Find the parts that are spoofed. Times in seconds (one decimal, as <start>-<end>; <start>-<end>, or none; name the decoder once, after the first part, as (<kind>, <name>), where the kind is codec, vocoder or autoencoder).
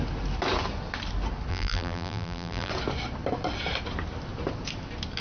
1.5-2.7 (vocoder, BigVGAN v2)